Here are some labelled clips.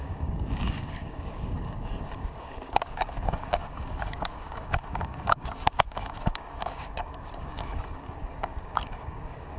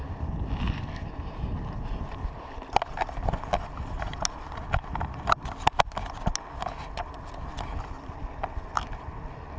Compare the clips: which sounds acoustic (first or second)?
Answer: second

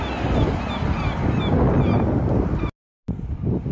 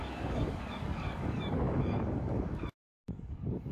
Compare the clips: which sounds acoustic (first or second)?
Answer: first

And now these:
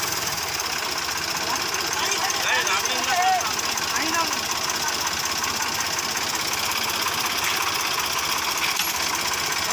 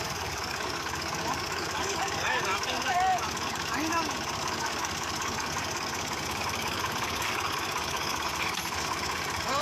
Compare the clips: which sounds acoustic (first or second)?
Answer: first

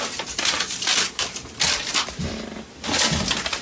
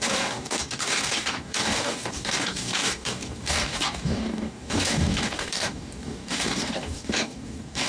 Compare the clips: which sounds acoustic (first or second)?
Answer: first